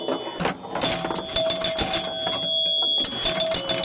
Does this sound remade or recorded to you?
recorded